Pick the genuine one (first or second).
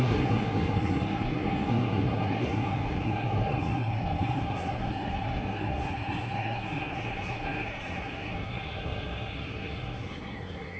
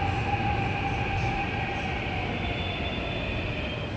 second